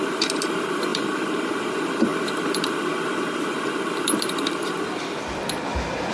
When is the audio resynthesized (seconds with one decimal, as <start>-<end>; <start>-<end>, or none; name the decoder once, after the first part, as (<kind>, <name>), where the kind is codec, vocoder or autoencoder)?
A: 0.0-6.1 (vocoder, BigVGAN v2)